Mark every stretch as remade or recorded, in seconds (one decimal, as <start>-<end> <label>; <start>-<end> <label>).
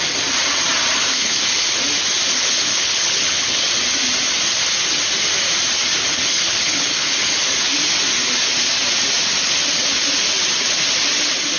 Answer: 0.0-1.1 recorded; 1.1-1.8 remade; 1.8-2.3 recorded; 2.3-3.7 remade; 3.7-6.0 recorded; 6.0-7.3 remade; 7.3-11.6 recorded